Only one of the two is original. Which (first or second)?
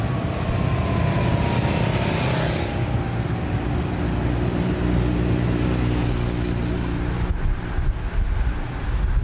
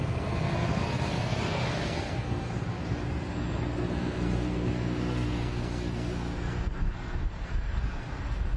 first